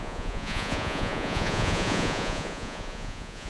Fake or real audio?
fake